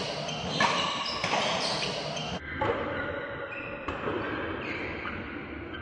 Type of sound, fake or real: real